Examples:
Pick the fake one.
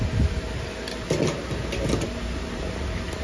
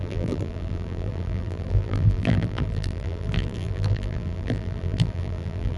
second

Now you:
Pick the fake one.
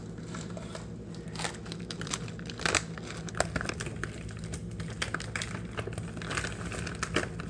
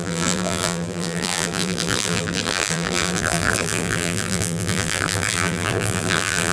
second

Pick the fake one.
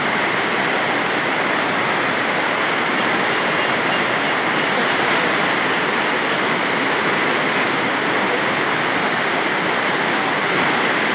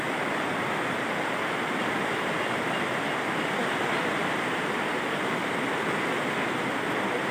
second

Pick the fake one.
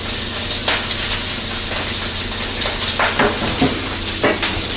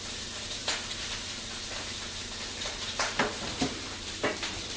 second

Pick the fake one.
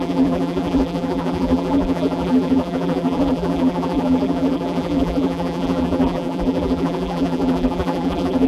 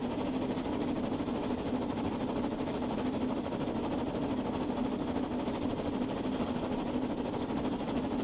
first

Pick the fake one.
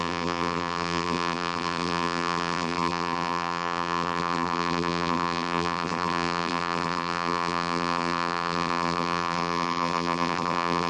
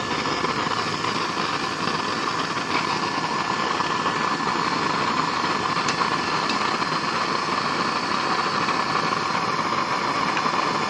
first